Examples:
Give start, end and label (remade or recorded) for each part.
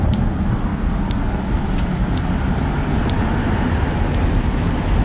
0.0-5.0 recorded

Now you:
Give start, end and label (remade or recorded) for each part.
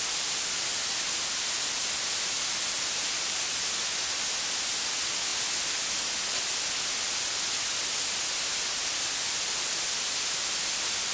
0.0-11.1 recorded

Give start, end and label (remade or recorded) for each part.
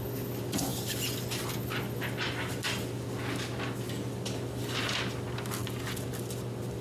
0.0-6.8 recorded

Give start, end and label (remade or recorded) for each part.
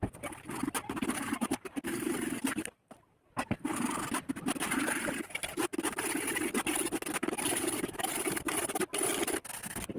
0.0-1.0 recorded; 1.0-3.3 remade; 3.3-7.2 recorded; 7.2-8.3 remade; 8.3-10.0 recorded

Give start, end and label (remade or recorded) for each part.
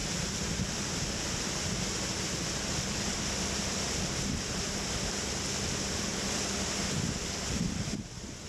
0.0-5.1 remade; 5.1-6.1 recorded; 6.1-6.7 remade; 6.7-8.5 recorded